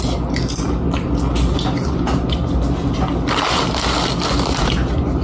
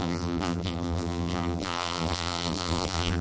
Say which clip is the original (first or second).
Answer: first